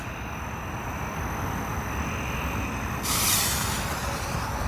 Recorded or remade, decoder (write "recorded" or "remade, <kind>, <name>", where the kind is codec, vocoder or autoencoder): recorded